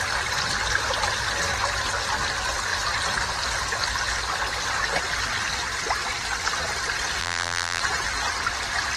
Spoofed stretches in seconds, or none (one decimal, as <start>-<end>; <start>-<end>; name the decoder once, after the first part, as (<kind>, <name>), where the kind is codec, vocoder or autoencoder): 7.2-7.8 (vocoder, BigVGAN v2)